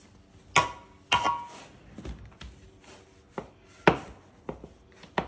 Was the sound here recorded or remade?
recorded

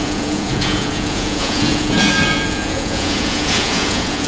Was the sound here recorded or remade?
remade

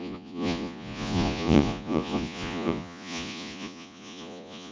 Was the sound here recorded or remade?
remade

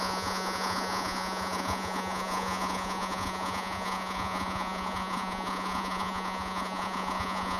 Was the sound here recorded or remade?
remade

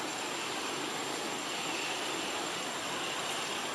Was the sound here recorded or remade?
recorded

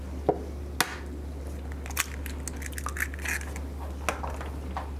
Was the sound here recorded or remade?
recorded